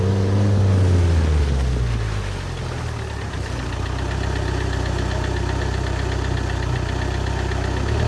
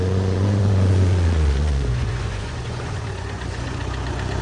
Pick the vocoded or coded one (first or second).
second